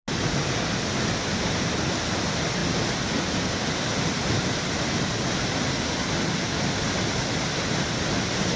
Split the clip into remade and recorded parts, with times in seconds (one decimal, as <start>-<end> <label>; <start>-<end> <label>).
0.0-8.6 recorded